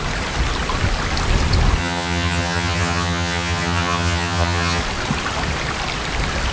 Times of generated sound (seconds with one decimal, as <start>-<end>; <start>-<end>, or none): 1.8-4.8